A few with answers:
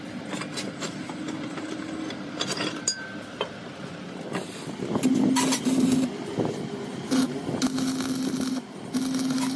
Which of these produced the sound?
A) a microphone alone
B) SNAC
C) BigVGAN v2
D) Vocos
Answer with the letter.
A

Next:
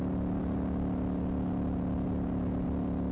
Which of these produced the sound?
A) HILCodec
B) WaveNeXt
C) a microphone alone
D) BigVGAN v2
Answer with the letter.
C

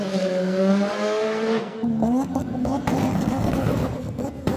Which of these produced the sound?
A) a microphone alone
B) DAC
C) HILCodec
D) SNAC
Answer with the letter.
D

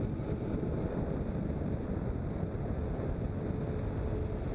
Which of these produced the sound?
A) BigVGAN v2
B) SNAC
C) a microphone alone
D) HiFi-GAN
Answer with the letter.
C